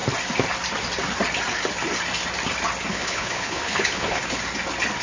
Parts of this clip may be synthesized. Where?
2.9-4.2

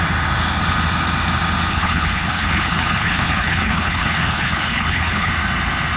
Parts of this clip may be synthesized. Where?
1.7-5.3

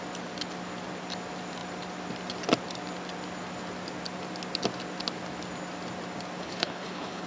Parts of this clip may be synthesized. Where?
6.4-7.3